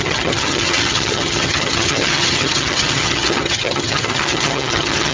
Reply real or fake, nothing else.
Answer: fake